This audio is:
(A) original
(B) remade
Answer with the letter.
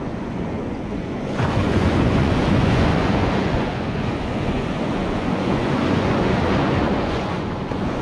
B